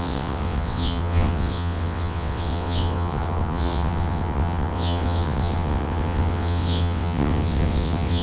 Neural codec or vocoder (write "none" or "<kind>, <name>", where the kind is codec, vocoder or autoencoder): vocoder, WaveNeXt